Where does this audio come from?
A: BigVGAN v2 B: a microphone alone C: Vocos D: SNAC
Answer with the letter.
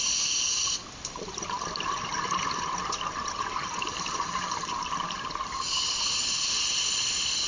A